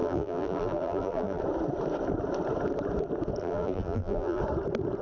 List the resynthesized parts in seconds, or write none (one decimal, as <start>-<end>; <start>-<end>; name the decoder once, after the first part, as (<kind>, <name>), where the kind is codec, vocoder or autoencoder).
0.0-1.4 (vocoder, BigVGAN v2); 3.4-4.4